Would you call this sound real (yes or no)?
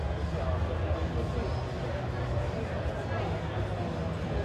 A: yes